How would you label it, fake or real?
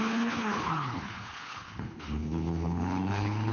fake